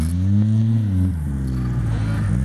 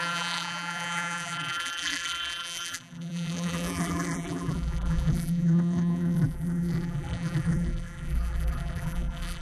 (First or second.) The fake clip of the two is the second